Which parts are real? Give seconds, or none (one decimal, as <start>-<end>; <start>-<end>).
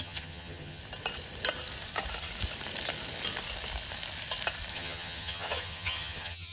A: 0.8-4.7